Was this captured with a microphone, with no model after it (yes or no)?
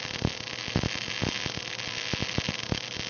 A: yes